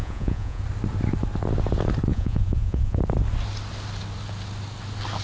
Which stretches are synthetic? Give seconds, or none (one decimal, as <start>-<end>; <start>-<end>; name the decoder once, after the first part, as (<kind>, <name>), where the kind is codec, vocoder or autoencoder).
0.0-0.6 (vocoder, Vocos); 2.1-3.0

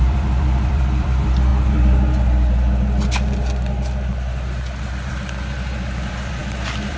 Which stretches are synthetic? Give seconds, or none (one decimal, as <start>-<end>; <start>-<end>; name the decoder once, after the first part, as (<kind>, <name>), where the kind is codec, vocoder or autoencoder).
0.0-1.5 (vocoder, BigVGAN v2); 5.1-7.0